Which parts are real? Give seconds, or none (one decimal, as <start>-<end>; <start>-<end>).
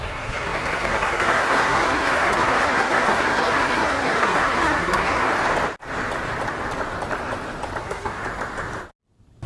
5.3-7.8; 8.2-9.5